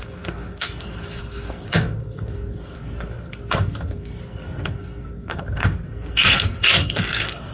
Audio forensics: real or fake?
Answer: fake